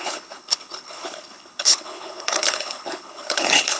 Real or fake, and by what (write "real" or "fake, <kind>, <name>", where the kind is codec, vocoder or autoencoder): fake, codec, HILCodec